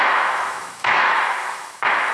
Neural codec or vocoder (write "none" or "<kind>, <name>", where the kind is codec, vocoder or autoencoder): autoencoder, DAC-VAE